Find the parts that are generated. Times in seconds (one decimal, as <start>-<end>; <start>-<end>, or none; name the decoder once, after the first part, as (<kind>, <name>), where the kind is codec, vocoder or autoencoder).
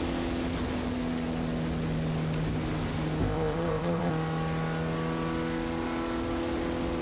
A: 3.2-4.1 (codec, ZipCodec)